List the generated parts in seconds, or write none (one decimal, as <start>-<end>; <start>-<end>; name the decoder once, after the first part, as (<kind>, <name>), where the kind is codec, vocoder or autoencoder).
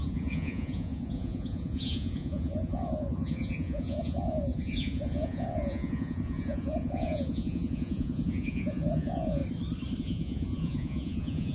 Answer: 0.0-9.4 (vocoder, Vocos); 10.0-11.5